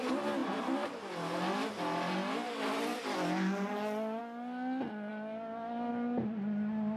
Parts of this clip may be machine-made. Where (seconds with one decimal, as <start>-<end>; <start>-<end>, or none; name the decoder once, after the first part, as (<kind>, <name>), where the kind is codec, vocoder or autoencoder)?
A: none